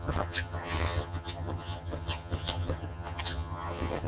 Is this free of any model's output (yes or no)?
no